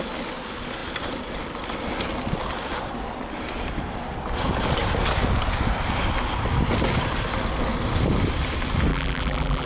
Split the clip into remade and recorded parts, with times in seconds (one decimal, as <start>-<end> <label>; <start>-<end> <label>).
0.0-8.9 recorded; 8.9-9.7 remade